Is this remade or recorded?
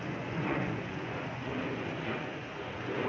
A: remade